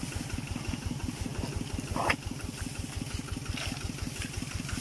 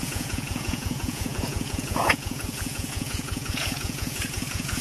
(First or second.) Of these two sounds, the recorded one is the first